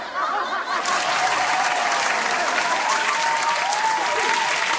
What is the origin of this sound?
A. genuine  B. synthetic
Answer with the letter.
A